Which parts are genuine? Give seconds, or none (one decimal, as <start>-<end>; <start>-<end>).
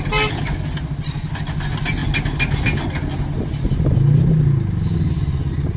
0.0-5.8